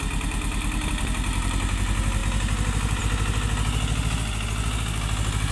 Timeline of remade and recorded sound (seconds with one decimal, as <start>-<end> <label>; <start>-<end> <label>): 0.0-5.5 recorded